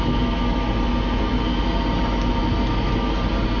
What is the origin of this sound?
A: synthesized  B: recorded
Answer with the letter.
B